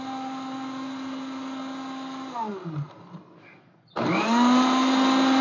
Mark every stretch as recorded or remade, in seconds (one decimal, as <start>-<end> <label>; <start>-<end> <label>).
0.0-5.4 recorded